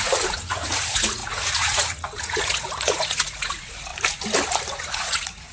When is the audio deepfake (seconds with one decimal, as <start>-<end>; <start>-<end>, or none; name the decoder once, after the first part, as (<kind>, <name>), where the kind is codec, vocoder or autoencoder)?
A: 0.0-3.9 (vocoder, Vocos); 4.8-5.5